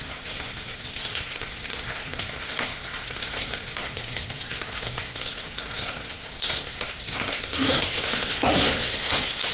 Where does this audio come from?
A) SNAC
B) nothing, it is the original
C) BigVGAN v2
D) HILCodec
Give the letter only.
A